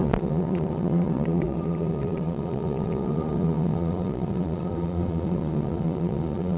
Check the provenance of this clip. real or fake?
fake